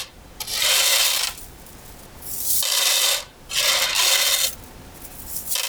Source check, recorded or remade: recorded